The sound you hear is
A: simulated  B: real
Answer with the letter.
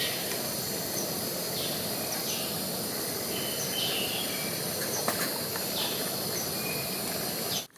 B